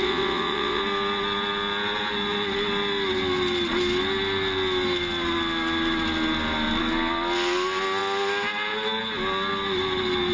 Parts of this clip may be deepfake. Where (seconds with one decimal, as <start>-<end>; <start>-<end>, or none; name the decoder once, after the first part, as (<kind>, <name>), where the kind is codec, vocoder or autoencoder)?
0.0-0.8 (vocoder, WaveNeXt)